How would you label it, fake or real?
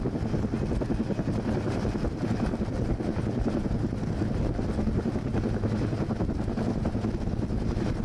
real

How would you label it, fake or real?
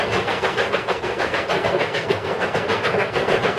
fake